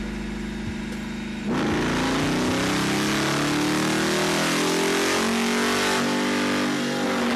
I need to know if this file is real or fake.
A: real